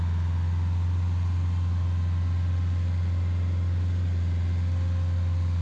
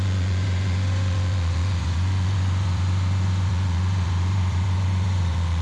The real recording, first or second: first